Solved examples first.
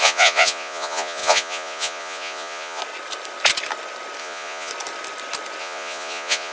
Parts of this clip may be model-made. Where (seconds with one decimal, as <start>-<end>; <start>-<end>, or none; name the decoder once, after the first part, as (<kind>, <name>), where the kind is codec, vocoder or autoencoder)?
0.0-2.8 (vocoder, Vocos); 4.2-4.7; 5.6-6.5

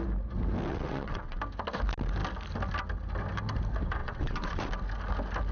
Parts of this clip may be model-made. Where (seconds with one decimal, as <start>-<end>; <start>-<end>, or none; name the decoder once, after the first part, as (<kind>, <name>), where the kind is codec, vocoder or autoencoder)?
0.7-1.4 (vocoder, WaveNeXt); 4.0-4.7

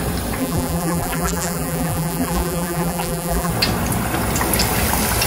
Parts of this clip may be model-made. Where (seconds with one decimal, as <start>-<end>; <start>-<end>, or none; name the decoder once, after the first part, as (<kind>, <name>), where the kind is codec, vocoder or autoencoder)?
0.4-3.5 (vocoder, BigVGAN v2)

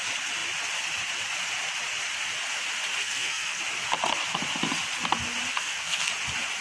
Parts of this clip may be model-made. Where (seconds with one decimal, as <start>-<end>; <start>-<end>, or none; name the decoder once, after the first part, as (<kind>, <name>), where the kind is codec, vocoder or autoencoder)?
3.0-3.6 (codec, SNAC); 5.5-6.1

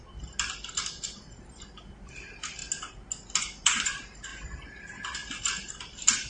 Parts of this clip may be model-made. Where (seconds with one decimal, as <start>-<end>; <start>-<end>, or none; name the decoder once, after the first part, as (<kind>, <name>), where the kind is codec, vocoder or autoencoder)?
0.0-2.6 (vocoder, BigVGAN v2); 3.4-4.3; 5.4-6.3